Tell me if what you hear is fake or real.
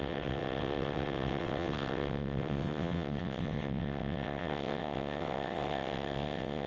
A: fake